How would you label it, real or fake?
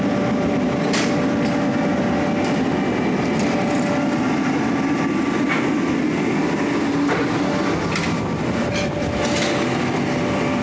real